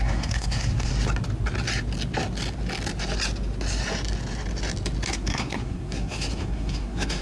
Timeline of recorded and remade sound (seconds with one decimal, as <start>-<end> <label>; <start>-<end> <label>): 0.0-0.9 remade; 0.9-5.1 recorded; 5.1-7.2 remade